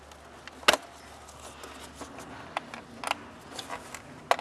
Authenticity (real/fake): real